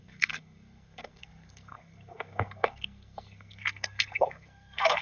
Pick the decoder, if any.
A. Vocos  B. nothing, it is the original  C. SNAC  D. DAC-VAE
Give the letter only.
C